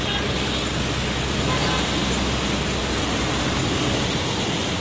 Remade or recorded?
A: recorded